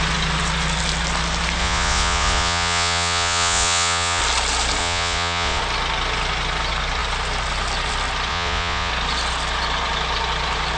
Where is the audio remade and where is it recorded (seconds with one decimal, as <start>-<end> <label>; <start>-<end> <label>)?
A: 0.0-1.6 recorded; 1.6-4.2 remade; 4.2-4.8 recorded; 4.8-5.6 remade; 5.6-8.3 recorded; 8.3-8.9 remade; 8.9-10.8 recorded

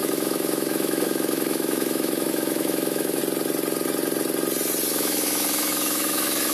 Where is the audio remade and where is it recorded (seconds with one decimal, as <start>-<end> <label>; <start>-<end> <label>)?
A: 0.0-3.2 remade; 3.2-4.9 recorded; 4.9-6.5 remade